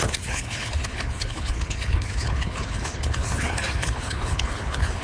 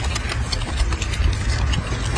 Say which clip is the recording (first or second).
second